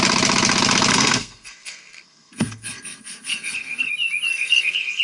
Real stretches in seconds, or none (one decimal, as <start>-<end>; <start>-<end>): 0.0-0.9; 3.9-4.3